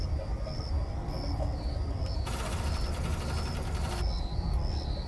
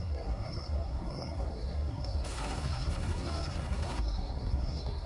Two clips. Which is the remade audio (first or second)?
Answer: second